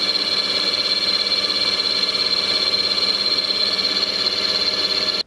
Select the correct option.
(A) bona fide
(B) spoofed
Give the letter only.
A